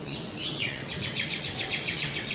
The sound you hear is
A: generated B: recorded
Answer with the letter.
A